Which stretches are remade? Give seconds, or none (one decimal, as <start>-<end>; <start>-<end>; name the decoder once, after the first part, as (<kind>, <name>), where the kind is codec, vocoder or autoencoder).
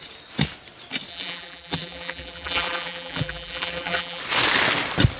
1.1-4.2 (vocoder, BigVGAN v2)